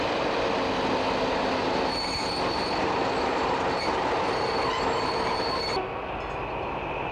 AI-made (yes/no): no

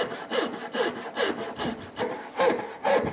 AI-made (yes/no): no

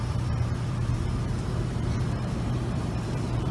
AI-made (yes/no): yes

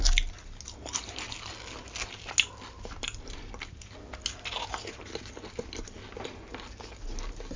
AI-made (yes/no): no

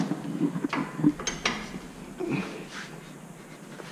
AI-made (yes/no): no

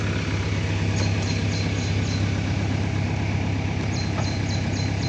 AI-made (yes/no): no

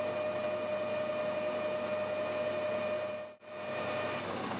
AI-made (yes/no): no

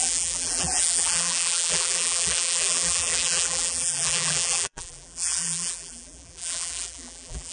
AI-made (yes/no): yes